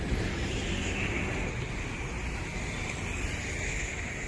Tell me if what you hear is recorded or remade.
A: recorded